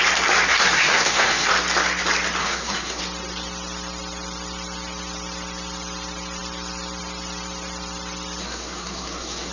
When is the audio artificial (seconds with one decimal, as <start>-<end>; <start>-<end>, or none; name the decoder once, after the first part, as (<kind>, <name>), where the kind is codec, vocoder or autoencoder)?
0.5-1.5 (codec, SNAC); 2.4-3.0; 8.4-9.5